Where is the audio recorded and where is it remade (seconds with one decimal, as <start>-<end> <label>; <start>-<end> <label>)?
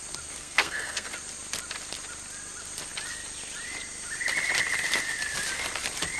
0.0-0.4 recorded; 0.4-1.1 remade; 1.1-6.2 recorded